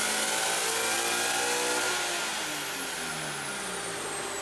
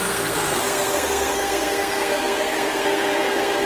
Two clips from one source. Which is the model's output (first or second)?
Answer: second